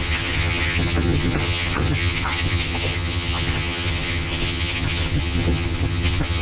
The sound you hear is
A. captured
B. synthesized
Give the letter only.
B